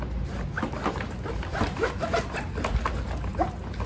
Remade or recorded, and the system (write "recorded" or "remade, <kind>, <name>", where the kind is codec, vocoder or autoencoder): recorded